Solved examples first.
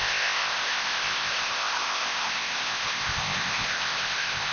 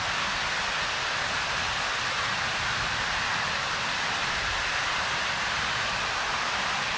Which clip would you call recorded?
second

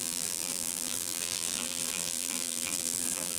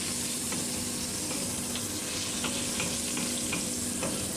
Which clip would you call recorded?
second